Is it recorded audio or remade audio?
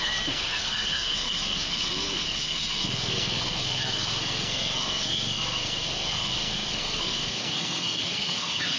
remade